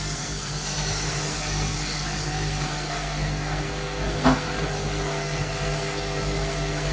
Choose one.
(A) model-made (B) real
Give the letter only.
A